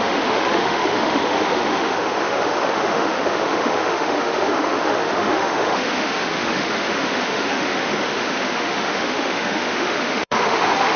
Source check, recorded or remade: remade